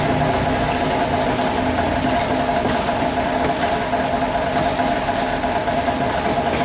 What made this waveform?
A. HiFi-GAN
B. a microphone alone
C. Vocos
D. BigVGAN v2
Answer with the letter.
B